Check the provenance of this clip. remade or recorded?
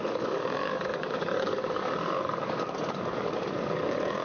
remade